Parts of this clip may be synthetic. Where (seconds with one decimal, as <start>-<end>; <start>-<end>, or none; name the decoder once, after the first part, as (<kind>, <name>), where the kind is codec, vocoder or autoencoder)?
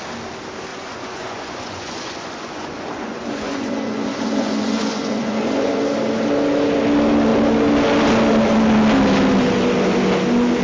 0.7-5.8 (vocoder, Vocos)